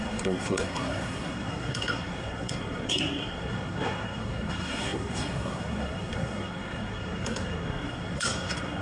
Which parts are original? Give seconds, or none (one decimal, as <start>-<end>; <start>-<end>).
none